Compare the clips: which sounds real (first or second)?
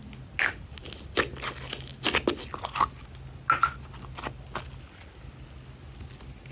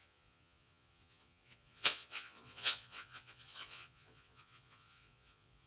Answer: first